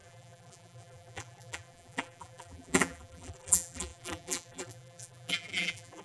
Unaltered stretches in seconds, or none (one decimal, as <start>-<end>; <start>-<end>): none